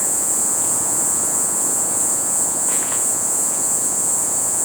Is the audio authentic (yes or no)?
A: no